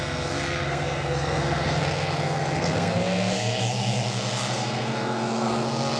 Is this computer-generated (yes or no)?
yes